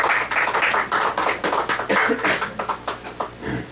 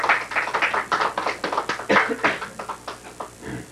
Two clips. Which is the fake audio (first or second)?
second